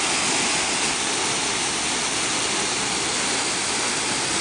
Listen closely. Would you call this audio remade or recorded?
recorded